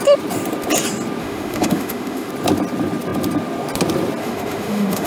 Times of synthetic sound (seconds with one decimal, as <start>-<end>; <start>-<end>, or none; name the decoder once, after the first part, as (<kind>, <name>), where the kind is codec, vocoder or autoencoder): 1.2-2.3 (autoencoder, DAC-VAE); 4.2-5.1